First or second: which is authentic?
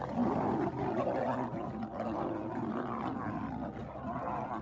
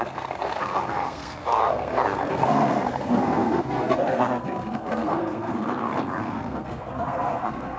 first